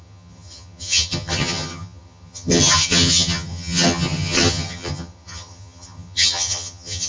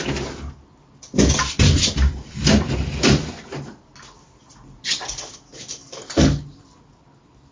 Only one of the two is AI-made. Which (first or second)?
first